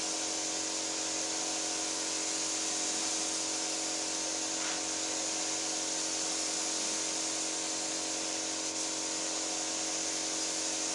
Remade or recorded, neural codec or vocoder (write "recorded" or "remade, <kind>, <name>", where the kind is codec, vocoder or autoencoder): remade, vocoder, BigVGAN v2